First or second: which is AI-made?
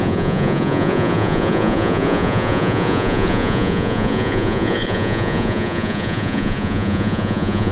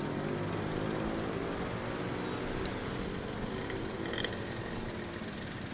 first